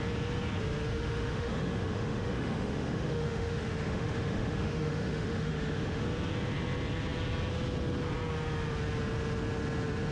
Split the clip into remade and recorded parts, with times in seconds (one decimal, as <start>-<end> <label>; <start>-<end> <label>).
0.0-0.9 recorded; 0.9-6.0 remade; 6.0-10.1 recorded